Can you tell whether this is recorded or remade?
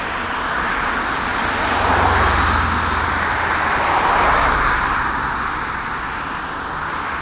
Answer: recorded